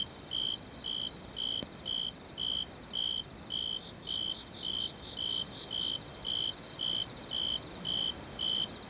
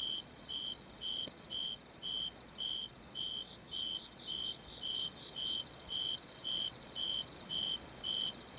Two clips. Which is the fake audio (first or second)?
second